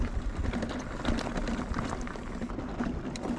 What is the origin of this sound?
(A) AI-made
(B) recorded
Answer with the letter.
B